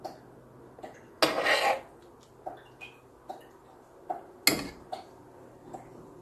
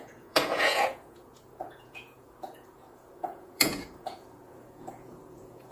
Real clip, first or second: first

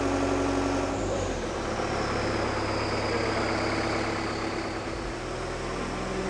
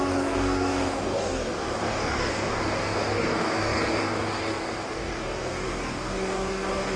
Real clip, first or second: first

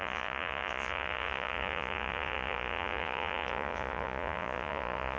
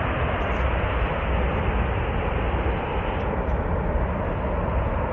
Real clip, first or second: second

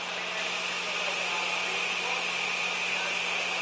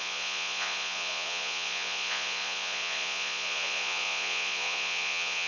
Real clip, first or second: first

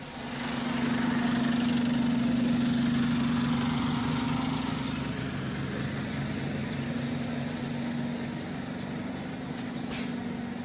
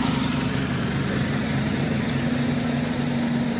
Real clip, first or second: first